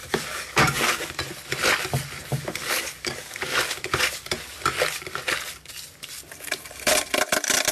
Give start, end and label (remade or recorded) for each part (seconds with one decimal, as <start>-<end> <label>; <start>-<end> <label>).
0.0-1.2 remade; 1.2-2.3 recorded; 2.3-4.3 remade; 4.3-7.7 recorded